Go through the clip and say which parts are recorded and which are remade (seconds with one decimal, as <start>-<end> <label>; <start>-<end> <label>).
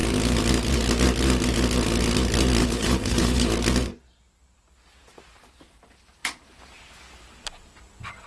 0.0-2.6 recorded; 2.6-3.5 remade; 3.5-8.3 recorded